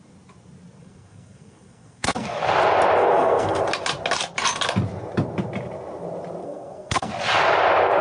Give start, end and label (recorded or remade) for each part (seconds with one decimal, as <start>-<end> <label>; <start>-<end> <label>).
0.0-0.8 recorded; 0.8-2.4 remade; 2.4-3.0 recorded; 3.0-3.6 remade; 3.6-6.4 recorded; 6.4-7.1 remade; 7.1-8.0 recorded